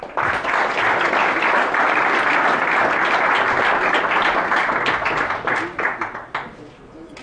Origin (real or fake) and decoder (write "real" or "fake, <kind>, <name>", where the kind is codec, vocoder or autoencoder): real